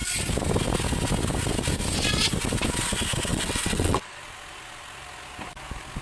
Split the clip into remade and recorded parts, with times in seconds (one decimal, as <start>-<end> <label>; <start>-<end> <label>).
0.0-3.3 recorded; 3.3-4.2 remade; 4.2-6.0 recorded